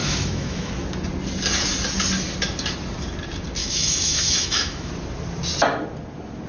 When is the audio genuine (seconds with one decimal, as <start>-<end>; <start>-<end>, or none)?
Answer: 0.7-3.6; 4.9-6.5